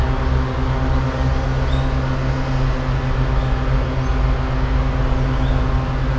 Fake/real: real